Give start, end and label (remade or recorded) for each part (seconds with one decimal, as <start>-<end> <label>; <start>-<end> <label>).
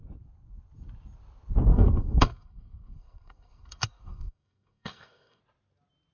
0.0-1.7 recorded; 1.7-5.4 remade; 5.4-6.1 recorded